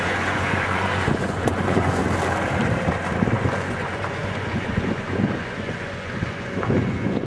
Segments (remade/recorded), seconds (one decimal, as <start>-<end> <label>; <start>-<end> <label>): 0.0-2.0 remade; 2.0-3.3 recorded; 3.3-7.3 remade